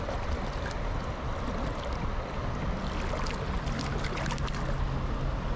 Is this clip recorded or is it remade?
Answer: recorded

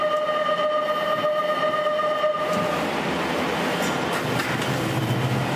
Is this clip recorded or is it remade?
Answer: recorded